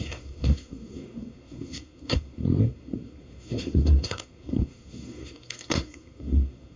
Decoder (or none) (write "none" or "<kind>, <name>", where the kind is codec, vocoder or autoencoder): codec, SNAC